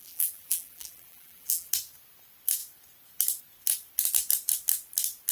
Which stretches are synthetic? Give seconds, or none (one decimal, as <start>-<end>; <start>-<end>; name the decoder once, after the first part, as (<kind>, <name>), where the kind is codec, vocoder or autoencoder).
0.0-1.7 (vocoder, BigVGAN v2)